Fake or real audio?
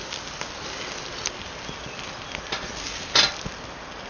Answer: real